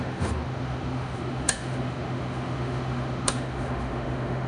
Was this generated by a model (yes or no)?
yes